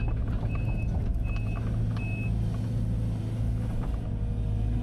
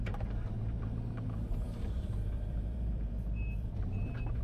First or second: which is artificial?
second